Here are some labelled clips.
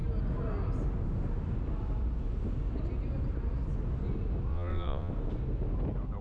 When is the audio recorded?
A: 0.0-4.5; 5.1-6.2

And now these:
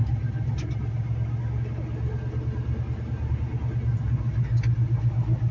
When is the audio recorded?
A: 0.0-5.5

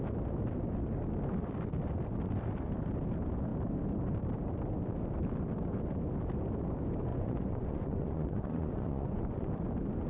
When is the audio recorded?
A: 0.0-7.1; 9.5-10.1

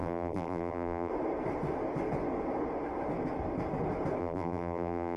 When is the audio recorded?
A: 1.1-4.2

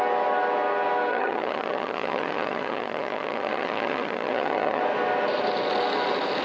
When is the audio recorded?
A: 0.0-1.1; 4.8-6.4

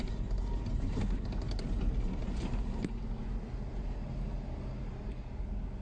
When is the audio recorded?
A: 0.0-5.8

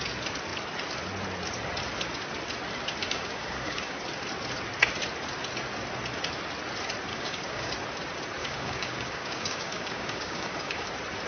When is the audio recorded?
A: 0.0-3.0; 4.0-7.1; 7.7-8.4; 10.9-11.3

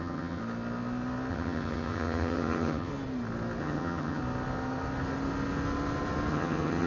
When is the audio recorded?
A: 0.4-1.3; 2.9-3.6; 4.2-6.3